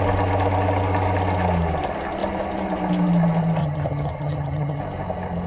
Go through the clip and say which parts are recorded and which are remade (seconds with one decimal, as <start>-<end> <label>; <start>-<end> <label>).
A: 0.0-3.6 recorded; 3.6-4.8 remade; 4.8-5.5 recorded